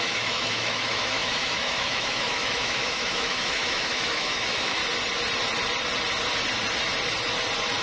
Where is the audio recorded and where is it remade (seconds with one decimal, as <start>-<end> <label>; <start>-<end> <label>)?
0.0-4.8 remade; 4.8-7.8 recorded